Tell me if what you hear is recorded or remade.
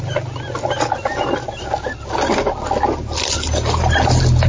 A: recorded